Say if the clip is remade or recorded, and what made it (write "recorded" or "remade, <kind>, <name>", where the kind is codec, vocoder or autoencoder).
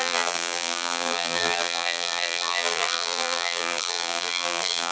remade, vocoder, BigVGAN v2